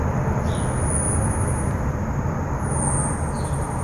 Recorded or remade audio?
recorded